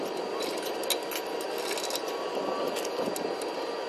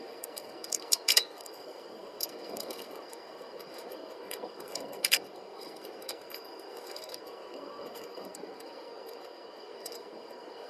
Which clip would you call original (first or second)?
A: first